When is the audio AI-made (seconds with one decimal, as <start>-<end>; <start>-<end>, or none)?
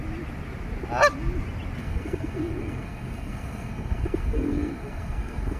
1.8-5.6